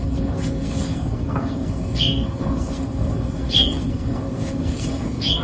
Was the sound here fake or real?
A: fake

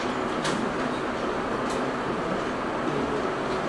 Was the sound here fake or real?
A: real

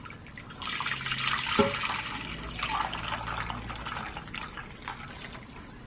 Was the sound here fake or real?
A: real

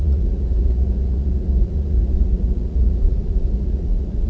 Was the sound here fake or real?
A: fake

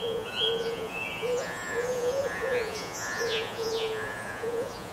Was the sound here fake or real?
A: fake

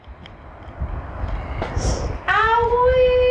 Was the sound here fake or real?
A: real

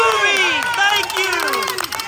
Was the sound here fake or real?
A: real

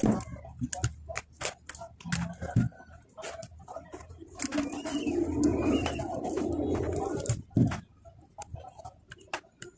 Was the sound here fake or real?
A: real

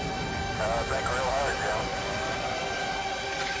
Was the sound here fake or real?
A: real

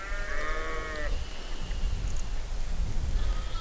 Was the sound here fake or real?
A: real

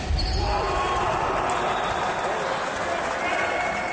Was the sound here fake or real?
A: real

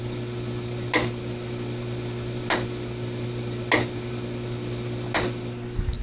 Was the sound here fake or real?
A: real